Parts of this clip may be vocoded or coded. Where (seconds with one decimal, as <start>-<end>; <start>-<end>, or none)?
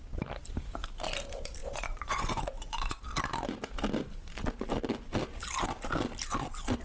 1.6-3.0